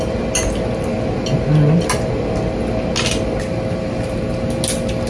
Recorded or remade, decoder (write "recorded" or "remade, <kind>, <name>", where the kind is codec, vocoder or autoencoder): recorded